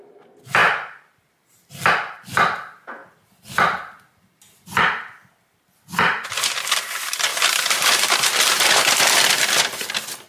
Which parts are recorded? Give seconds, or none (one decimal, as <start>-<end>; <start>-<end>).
0.0-7.3; 8.8-10.3